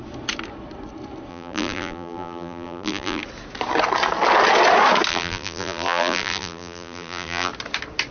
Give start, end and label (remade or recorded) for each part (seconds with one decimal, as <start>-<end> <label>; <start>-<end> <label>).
0.0-1.3 recorded; 1.3-3.2 remade; 3.2-5.1 recorded; 5.1-7.5 remade; 7.5-8.1 recorded